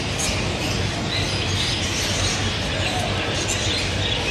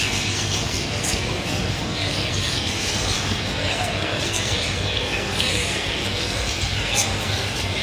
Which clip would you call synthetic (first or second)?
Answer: second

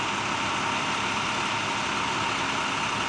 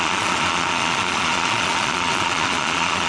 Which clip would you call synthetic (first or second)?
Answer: second